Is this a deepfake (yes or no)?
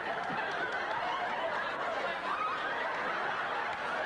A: no